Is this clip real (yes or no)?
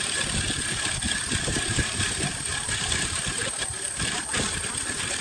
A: yes